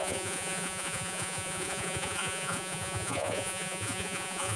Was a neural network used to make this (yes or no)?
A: yes